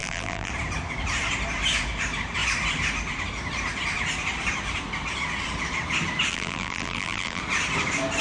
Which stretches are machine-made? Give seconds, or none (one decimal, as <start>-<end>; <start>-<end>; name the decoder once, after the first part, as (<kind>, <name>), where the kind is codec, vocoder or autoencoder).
0.0-0.5 (vocoder, BigVGAN v2); 6.3-7.4